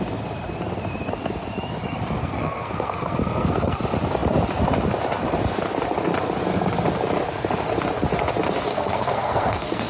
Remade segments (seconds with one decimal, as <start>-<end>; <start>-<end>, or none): 2.2-3.8; 8.7-9.9